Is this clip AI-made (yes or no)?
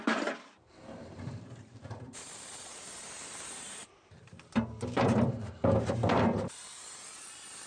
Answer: yes